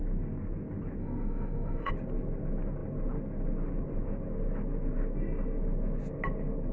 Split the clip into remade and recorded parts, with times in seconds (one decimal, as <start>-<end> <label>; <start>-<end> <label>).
0.0-1.0 recorded; 1.0-1.9 remade; 1.9-6.7 recorded